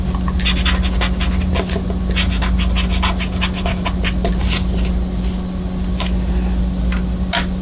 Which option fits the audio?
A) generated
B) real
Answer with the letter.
B